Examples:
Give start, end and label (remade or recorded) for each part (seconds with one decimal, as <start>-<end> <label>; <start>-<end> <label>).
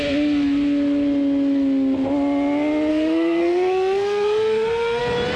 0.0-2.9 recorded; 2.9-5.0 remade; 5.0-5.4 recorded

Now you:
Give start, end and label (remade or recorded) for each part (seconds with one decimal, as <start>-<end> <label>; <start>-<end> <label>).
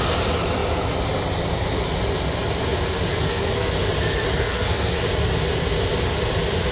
0.0-3.1 recorded; 3.1-3.7 remade; 3.7-4.3 recorded; 4.3-5.0 remade; 5.0-6.7 recorded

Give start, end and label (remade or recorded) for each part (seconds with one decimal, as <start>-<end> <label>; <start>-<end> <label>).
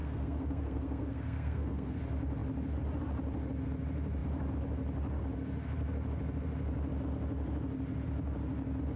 0.0-2.0 remade; 2.0-9.0 recorded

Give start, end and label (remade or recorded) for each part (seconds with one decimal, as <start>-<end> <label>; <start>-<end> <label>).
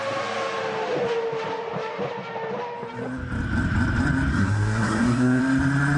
0.0-4.3 recorded; 4.3-5.4 remade; 5.4-6.0 recorded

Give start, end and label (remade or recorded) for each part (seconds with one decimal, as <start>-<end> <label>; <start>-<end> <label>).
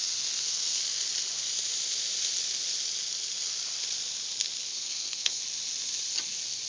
0.0-0.8 remade; 0.8-4.7 recorded; 4.7-5.4 remade; 5.4-6.7 recorded